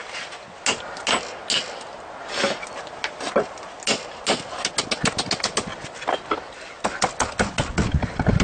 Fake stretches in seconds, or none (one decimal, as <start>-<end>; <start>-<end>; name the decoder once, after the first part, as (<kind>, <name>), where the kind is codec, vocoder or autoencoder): none